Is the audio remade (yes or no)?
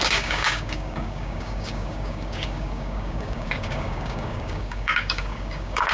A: yes